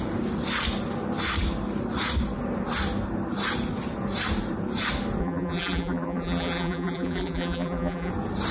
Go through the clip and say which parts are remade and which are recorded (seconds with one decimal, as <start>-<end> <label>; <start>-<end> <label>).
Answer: 0.0-5.2 recorded; 5.2-8.1 remade; 8.1-8.5 recorded